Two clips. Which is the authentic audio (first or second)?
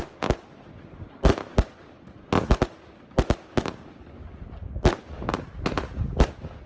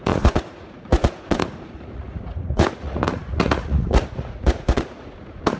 first